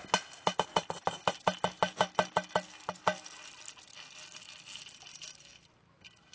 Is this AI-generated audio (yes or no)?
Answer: no